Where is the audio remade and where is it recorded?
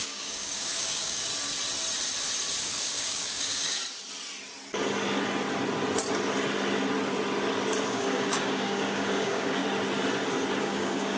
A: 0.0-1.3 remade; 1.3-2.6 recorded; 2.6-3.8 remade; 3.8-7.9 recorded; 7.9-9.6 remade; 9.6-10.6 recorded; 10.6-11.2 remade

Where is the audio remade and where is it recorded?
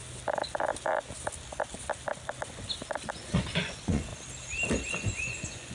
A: 0.0-3.1 recorded; 3.1-4.1 remade; 4.1-4.9 recorded; 4.9-5.7 remade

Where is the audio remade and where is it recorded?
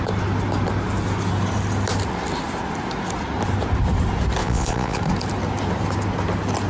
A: 0.0-4.4 recorded; 4.4-5.0 remade; 5.0-6.7 recorded